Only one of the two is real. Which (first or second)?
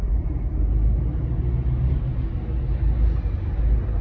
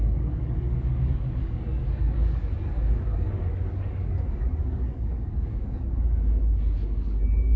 first